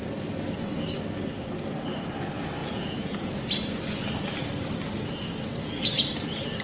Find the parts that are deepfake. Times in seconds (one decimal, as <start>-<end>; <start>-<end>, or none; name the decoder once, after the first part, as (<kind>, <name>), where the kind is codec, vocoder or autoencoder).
2.6-3.3 (vocoder, Vocos)